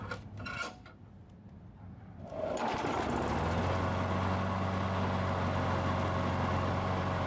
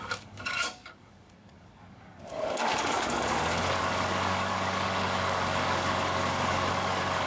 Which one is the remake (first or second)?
second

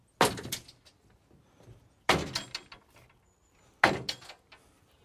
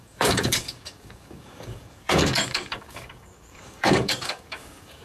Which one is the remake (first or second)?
second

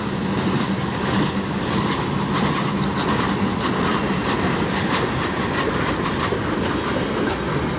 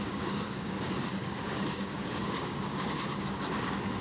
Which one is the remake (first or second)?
second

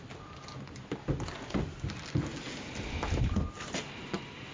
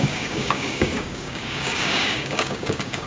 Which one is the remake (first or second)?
second